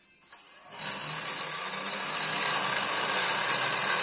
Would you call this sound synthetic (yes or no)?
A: no